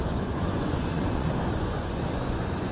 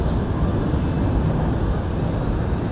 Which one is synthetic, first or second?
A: first